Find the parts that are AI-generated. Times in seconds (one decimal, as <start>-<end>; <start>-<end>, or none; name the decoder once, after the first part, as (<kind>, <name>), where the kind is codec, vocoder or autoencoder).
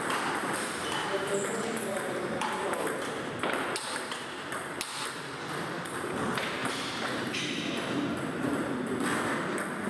1.0-5.4 (vocoder, BigVGAN v2); 6.6-7.5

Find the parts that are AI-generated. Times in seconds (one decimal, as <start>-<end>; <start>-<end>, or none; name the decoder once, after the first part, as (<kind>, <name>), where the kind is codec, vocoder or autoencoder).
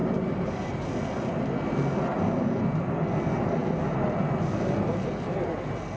0.0-0.9 (vocoder, BigVGAN v2)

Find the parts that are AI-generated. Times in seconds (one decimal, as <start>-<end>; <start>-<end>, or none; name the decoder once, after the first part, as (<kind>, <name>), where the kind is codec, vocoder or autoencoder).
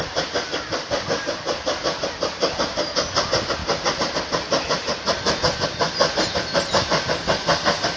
none